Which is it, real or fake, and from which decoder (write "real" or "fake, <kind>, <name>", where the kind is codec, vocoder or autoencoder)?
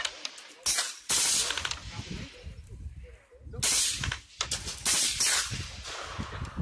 real